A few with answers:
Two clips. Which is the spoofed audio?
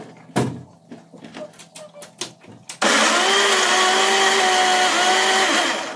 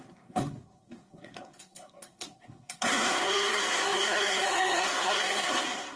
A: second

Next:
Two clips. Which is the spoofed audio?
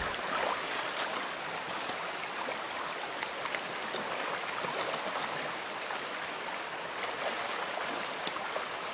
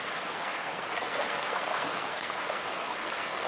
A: second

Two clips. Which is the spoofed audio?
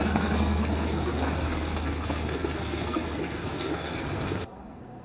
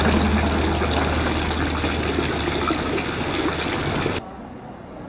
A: first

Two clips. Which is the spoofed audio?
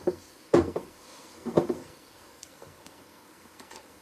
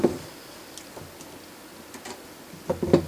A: first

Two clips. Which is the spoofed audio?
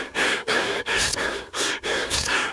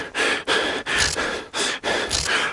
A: first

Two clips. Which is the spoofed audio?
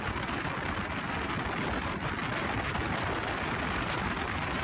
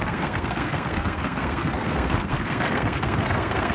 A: second